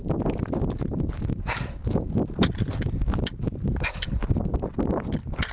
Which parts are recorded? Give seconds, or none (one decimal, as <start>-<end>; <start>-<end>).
0.0-5.5